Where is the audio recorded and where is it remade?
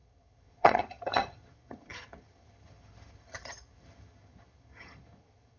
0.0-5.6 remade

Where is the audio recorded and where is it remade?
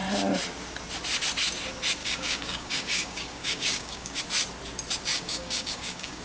0.0-2.0 recorded; 2.0-4.2 remade; 4.2-5.1 recorded; 5.1-6.2 remade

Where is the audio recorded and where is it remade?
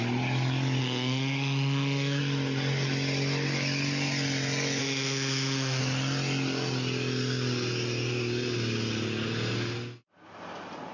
0.0-0.8 recorded; 0.8-2.2 remade; 2.2-4.8 recorded; 4.8-5.8 remade; 5.8-10.9 recorded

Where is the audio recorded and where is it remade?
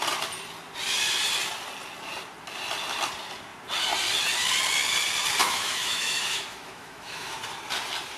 0.0-5.4 recorded; 5.4-7.4 remade; 7.4-8.2 recorded